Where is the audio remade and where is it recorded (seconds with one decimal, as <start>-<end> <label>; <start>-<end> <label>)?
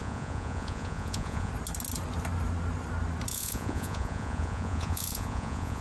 0.0-1.5 remade; 1.5-3.3 recorded; 3.3-5.8 remade